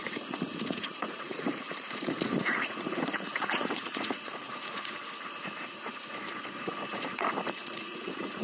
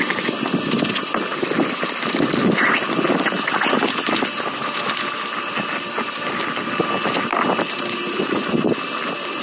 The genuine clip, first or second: second